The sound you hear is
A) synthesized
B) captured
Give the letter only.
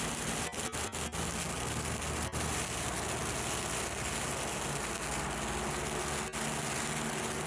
B